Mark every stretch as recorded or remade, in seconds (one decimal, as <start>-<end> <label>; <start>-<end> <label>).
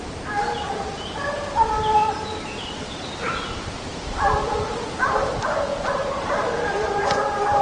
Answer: 0.0-3.9 recorded; 3.9-5.3 remade; 5.3-5.7 recorded; 5.7-7.0 remade; 7.0-7.6 recorded